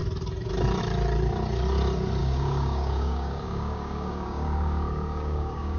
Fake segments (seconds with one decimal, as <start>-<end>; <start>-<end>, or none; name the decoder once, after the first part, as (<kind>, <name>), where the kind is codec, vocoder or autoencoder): 2.2-5.8 (codec, DAC)